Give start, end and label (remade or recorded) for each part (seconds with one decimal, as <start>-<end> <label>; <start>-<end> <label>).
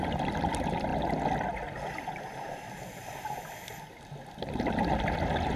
0.0-5.6 recorded